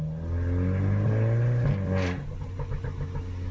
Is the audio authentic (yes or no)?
yes